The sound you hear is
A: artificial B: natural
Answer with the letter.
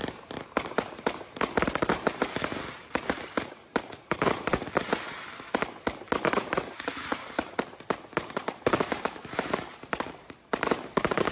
A